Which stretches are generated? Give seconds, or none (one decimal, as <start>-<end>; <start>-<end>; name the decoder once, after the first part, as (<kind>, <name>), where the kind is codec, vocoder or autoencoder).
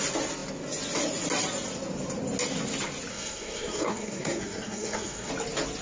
3.1-5.3 (codec, SNAC)